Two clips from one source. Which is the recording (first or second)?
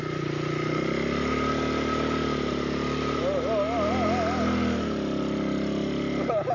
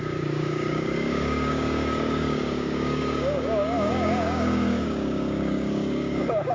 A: first